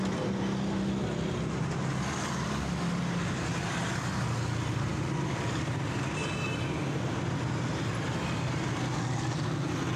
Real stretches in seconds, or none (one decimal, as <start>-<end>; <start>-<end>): 0.0-10.0